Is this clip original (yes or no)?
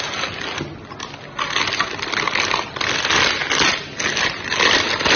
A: yes